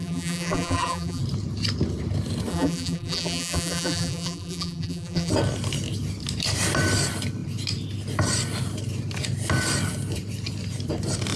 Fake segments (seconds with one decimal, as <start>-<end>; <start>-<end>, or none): 0.0-1.2; 2.5-5.3